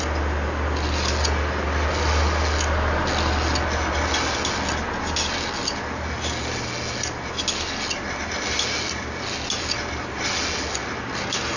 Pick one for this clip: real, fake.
real